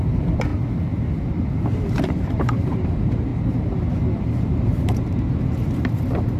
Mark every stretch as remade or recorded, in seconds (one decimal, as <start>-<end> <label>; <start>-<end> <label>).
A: 0.0-0.5 remade; 0.5-1.5 recorded; 1.5-3.3 remade; 3.3-4.2 recorded; 4.2-6.4 remade